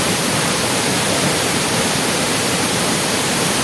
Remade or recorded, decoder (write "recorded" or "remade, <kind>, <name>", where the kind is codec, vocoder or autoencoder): remade, vocoder, BigVGAN v2